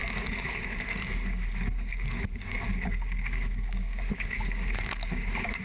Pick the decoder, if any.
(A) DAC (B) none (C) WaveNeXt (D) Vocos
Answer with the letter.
A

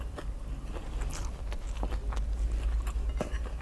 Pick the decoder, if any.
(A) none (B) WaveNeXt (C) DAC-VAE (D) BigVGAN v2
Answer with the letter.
A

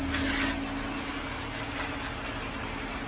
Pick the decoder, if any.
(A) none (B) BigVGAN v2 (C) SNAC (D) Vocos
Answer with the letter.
A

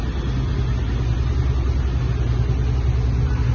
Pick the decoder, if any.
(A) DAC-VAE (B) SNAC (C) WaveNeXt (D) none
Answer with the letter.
D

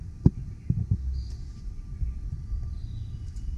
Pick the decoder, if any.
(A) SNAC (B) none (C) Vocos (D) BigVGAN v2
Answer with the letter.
B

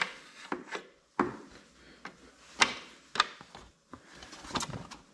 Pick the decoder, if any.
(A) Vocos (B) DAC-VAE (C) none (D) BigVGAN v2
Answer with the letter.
C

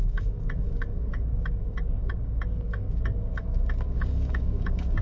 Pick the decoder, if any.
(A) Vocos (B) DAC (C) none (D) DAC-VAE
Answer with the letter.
B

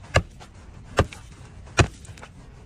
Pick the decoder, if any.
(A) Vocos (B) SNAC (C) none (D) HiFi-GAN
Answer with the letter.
C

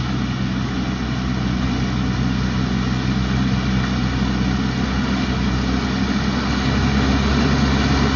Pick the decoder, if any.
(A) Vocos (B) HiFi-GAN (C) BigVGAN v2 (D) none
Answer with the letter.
D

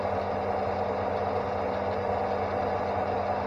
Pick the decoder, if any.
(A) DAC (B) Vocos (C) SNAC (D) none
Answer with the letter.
D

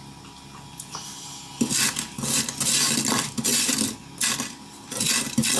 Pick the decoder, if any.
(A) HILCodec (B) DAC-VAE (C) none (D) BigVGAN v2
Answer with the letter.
C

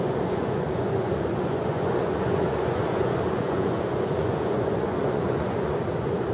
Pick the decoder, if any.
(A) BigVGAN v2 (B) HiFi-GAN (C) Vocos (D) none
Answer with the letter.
C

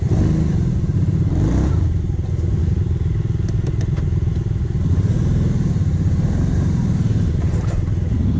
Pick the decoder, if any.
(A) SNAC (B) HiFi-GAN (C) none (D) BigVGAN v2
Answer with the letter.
C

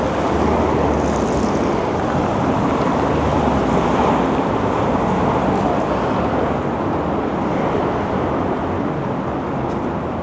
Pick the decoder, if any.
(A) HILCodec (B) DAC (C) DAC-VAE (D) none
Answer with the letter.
D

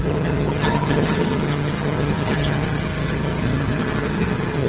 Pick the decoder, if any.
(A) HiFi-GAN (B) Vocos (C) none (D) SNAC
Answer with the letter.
A